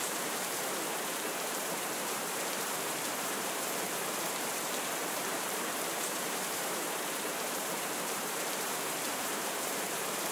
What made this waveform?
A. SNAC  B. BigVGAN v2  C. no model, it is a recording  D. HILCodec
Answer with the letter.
B